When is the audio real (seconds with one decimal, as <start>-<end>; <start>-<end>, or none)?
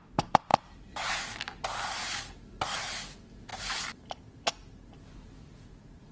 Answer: 0.0-0.5; 1.1-3.5; 4.3-6.1